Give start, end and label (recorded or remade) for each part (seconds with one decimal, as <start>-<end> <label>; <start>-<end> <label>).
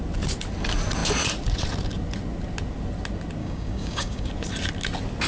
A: 0.0-3.4 recorded; 3.4-4.3 remade; 4.3-5.3 recorded